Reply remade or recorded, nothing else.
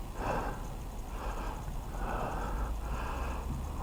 recorded